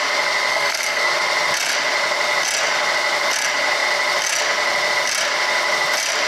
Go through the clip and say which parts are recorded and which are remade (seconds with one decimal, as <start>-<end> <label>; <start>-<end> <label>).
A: 0.0-0.5 recorded; 0.5-1.1 remade; 1.1-6.3 recorded